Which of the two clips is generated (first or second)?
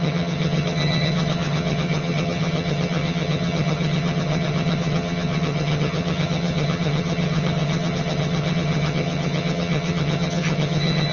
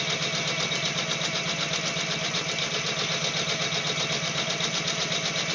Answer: first